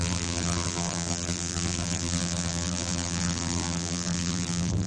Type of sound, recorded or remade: remade